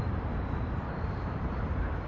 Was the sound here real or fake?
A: fake